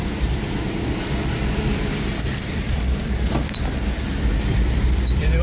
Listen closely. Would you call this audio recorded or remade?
remade